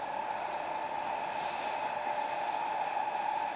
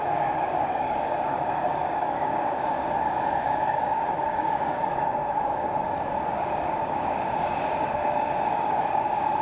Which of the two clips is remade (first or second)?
second